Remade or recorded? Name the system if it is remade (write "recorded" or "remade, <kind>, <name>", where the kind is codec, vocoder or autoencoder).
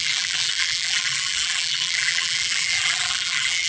remade, vocoder, BigVGAN v2